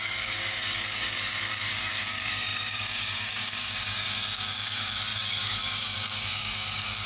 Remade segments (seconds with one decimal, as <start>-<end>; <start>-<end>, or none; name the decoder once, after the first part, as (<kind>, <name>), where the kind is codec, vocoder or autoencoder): 0.0-7.1 (codec, DAC)